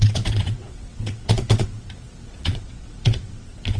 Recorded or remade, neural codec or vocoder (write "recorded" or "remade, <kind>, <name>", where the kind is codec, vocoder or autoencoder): remade, vocoder, WaveNeXt